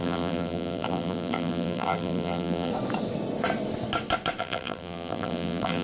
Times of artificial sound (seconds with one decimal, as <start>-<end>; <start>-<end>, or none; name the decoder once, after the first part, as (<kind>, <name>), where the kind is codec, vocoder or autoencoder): 0.0-2.7 (vocoder, BigVGAN v2); 4.4-5.8